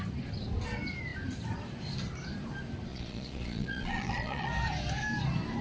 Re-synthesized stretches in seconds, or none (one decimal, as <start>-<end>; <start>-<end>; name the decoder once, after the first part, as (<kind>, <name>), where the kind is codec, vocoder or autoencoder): 2.9-4.5 (vocoder, Vocos)